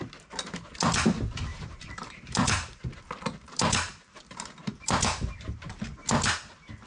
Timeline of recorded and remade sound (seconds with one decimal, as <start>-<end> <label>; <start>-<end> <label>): 0.0-1.5 recorded; 1.5-2.8 remade; 2.8-3.4 recorded; 3.4-5.8 remade; 5.8-6.9 recorded